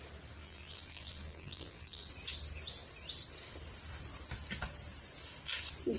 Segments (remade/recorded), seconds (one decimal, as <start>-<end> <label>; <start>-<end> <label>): 0.0-0.4 recorded; 0.4-2.1 remade; 2.1-6.0 recorded